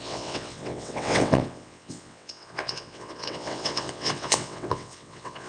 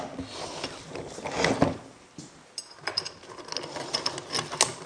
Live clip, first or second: second